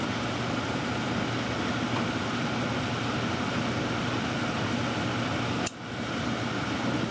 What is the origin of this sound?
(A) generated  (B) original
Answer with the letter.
B